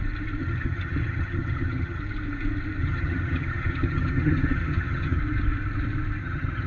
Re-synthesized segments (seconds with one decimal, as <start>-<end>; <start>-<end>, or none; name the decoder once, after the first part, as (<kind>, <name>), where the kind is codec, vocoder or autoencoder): 0.4-2.0 (vocoder, HiFi-GAN); 2.8-5.2; 6.2-6.7